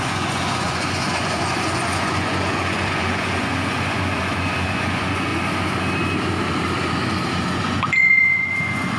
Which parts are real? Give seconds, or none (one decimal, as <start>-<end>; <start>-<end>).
5.3-7.5